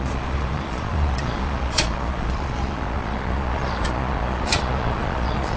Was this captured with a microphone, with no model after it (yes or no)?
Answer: no